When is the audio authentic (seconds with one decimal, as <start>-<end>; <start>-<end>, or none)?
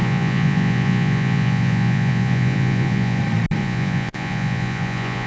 3.2-3.6